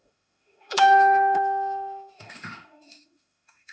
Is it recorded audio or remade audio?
remade